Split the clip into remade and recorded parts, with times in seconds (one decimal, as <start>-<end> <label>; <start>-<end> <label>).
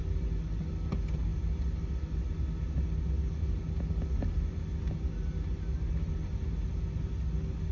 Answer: 0.0-7.7 recorded